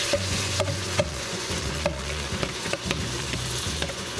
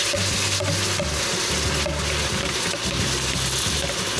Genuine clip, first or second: second